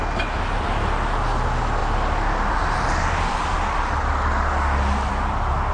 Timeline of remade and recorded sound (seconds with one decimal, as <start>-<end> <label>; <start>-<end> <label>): 0.0-5.7 recorded